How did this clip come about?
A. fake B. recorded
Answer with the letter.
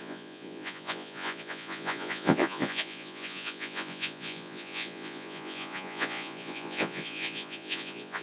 A